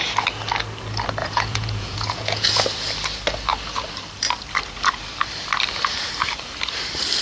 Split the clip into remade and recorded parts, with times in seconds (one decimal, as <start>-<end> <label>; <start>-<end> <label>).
0.0-1.2 recorded; 1.2-2.5 remade; 2.5-7.2 recorded